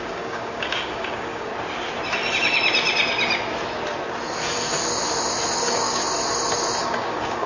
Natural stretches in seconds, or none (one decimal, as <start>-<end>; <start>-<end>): 1.5-5.6; 6.0-6.8